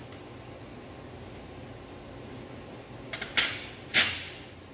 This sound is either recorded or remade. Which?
recorded